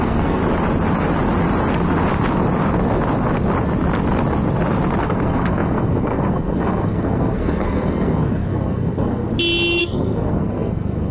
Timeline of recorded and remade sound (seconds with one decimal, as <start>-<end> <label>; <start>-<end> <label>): 0.0-0.4 remade; 0.4-5.0 recorded; 5.0-9.3 remade; 9.3-9.8 recorded; 9.8-11.1 remade